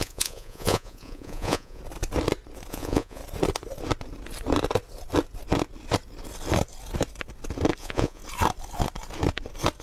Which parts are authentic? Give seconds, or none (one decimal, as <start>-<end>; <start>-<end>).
1.8-2.7; 3.2-7.8; 8.2-9.8